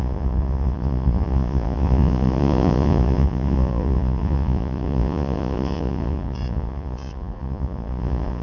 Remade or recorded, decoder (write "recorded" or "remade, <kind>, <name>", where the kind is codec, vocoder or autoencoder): remade, vocoder, Vocos